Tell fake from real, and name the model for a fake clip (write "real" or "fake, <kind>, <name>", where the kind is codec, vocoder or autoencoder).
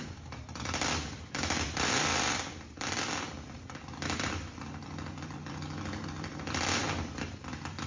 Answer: fake, vocoder, BigVGAN v2